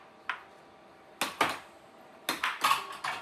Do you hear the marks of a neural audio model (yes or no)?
no